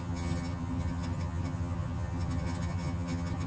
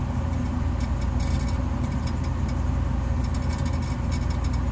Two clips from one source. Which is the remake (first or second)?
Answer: first